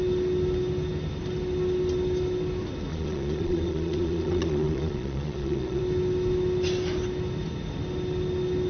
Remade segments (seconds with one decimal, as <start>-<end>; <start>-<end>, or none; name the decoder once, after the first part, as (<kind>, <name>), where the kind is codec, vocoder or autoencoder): 2.9-5.8 (vocoder, Vocos)